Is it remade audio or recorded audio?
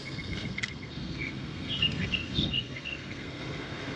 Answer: remade